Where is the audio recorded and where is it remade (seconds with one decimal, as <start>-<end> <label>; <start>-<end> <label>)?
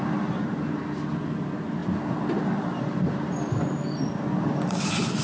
0.0-5.2 recorded